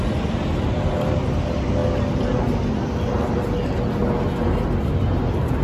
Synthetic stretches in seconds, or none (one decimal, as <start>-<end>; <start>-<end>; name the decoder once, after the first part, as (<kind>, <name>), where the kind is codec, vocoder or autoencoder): none